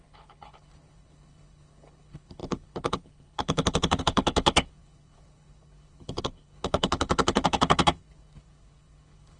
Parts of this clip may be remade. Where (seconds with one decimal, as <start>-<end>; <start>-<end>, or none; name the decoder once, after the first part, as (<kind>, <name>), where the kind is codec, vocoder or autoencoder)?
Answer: 0.0-9.4 (codec, HILCodec)